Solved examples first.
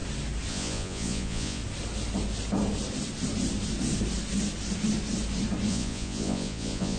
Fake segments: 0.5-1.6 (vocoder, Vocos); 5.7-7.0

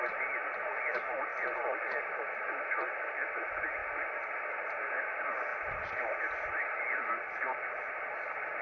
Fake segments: 1.3-2.5 (vocoder, BigVGAN v2); 5.5-7.4

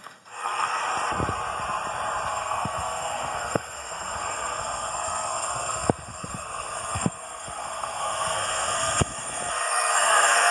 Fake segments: 0.0-0.8 (codec, SNAC); 2.3-10.5

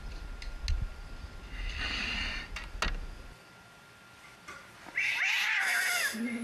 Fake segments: none